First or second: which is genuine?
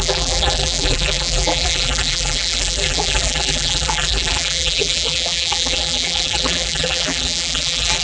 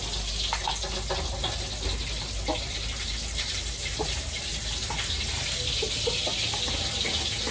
second